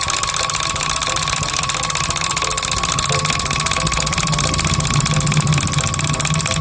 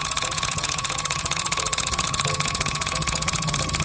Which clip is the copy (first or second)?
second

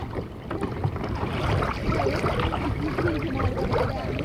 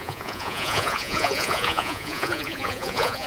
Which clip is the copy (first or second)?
second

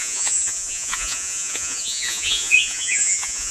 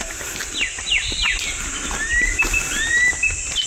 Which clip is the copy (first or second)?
first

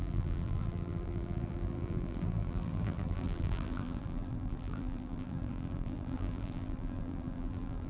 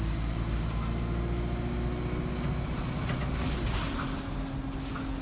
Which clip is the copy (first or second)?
first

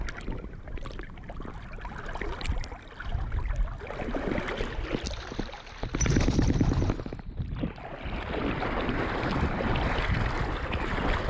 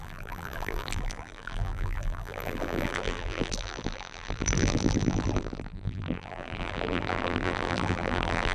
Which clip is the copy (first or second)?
second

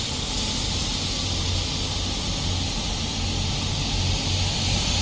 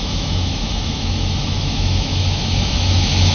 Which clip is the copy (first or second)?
second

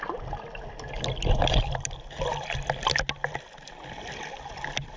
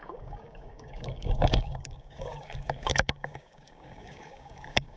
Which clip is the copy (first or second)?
second